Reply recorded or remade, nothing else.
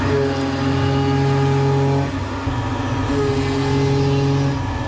recorded